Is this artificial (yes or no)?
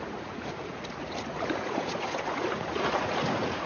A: yes